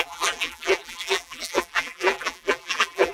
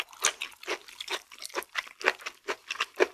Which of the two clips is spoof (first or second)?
first